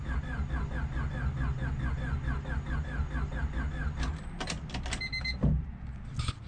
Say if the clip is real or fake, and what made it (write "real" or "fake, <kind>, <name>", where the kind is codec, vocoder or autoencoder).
real